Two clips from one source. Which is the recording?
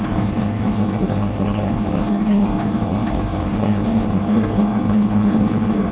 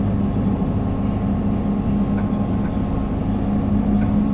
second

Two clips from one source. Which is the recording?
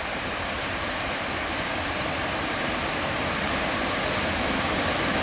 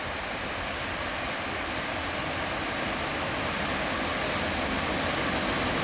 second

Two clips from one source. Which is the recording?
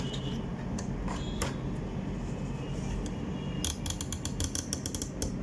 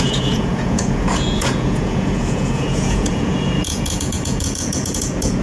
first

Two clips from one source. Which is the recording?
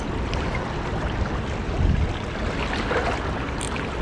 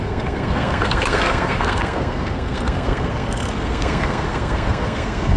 first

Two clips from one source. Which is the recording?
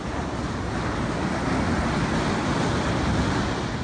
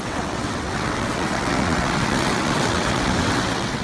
first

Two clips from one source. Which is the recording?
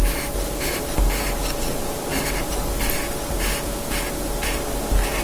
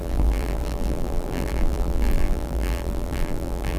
first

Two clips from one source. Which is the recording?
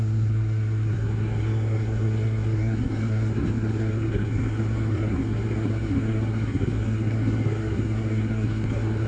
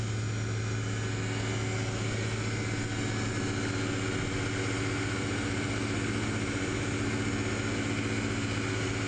second